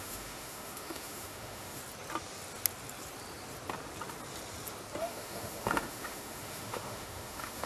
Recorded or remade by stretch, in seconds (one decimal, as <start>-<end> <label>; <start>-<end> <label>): 0.0-1.8 remade; 1.8-5.0 recorded; 5.0-7.7 remade